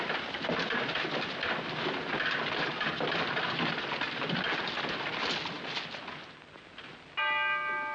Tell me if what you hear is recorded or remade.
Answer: recorded